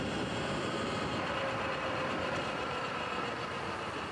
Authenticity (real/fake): fake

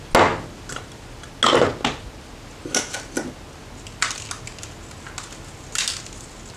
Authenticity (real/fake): real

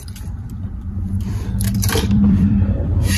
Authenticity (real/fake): fake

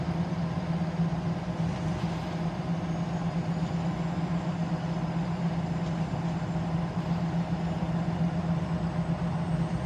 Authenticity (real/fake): real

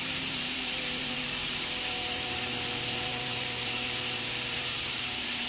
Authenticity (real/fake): fake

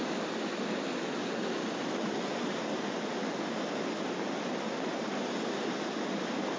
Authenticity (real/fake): real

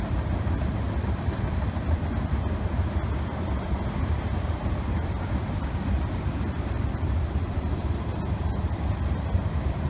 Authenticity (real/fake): fake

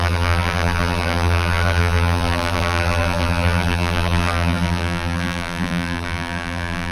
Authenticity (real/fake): fake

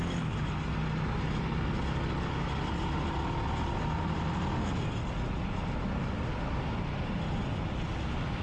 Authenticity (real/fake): real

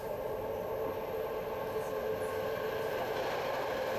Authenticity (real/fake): real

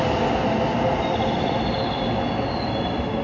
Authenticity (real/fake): real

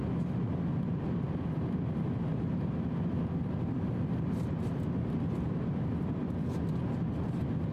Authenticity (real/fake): real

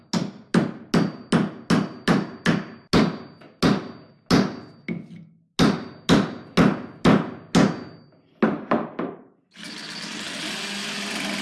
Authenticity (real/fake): real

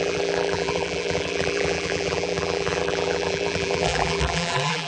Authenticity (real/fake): fake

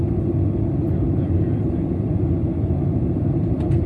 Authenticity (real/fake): real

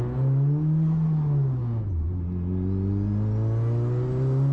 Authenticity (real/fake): real